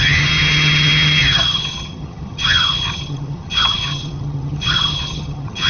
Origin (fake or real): fake